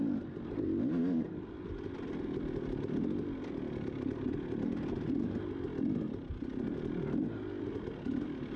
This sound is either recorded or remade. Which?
recorded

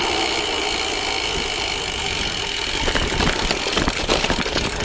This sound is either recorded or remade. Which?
recorded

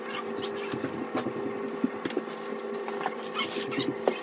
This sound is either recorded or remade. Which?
recorded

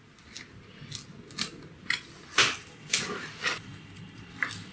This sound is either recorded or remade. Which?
recorded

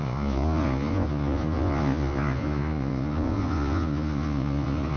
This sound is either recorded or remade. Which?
remade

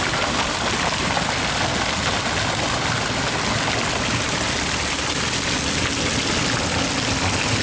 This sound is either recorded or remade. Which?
recorded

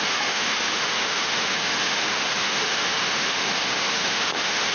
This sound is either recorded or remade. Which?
remade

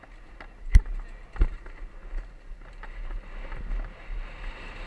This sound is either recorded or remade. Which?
recorded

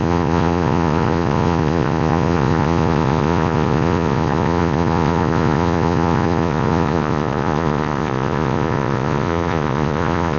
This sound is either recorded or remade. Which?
remade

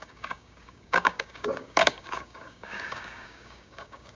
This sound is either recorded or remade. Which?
remade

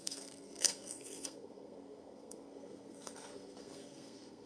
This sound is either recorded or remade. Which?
remade